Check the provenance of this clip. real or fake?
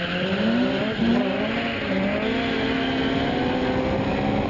real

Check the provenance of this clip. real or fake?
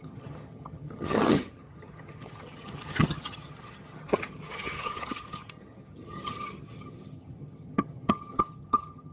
fake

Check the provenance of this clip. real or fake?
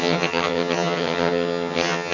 fake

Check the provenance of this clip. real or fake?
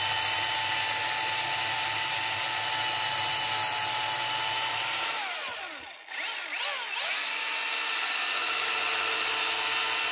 real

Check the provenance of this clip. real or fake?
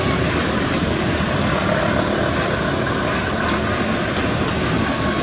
real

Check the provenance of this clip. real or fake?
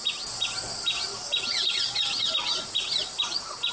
real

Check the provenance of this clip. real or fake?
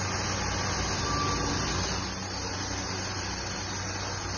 real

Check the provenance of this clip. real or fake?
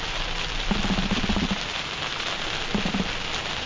real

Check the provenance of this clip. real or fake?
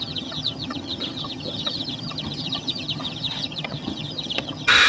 fake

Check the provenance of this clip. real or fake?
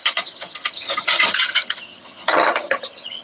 fake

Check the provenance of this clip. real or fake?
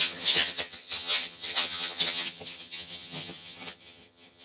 fake